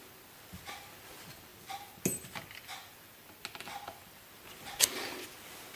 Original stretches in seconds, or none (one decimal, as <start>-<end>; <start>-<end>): 0.0-5.8